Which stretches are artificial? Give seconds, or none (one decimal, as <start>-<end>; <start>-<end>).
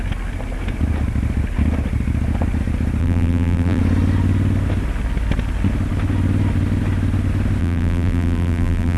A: 3.0-3.8; 7.6-9.0